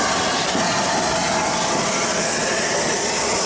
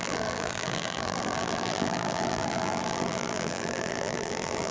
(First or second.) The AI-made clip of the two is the second